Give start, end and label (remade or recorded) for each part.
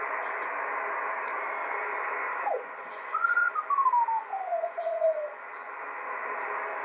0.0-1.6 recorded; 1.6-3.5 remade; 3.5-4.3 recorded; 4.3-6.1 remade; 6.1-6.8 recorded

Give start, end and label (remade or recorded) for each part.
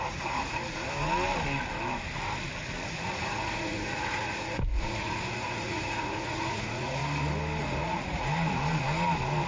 0.0-0.6 remade; 0.6-2.9 recorded; 2.9-7.0 remade; 7.0-7.6 recorded; 7.6-8.3 remade; 8.3-9.5 recorded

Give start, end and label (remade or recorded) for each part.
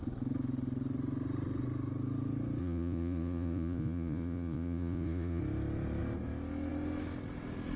0.0-2.6 recorded; 2.6-5.4 remade; 5.4-7.8 recorded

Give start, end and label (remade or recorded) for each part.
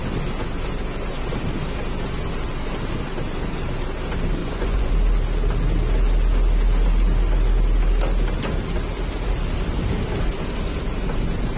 0.0-4.4 recorded; 4.4-4.9 remade; 4.9-11.6 recorded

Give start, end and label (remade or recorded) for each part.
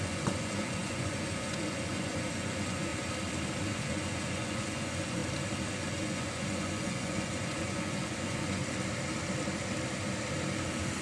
0.0-2.9 remade; 2.9-3.6 recorded; 3.6-5.2 remade; 5.2-5.7 recorded; 5.7-8.6 remade; 8.6-11.0 recorded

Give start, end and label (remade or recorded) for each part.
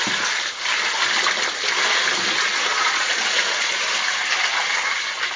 0.0-2.7 recorded; 2.7-3.8 remade; 3.8-5.4 recorded